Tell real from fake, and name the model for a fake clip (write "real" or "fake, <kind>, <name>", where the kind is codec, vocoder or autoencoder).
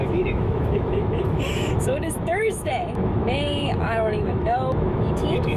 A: fake, autoencoder, DAC-VAE